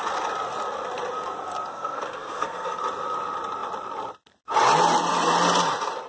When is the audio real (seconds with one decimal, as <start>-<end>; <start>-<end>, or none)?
0.0-1.7; 2.8-6.1